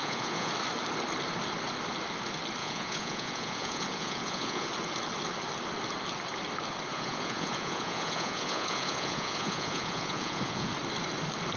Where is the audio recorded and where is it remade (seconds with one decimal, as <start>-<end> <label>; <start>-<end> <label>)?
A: 0.0-0.5 remade; 0.5-2.6 recorded; 2.6-4.7 remade; 4.7-6.9 recorded; 6.9-10.7 remade; 10.7-11.6 recorded